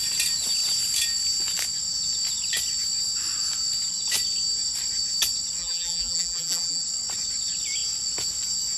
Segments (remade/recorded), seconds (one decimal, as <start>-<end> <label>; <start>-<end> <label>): 0.0-5.6 recorded; 5.6-6.8 remade; 6.8-8.8 recorded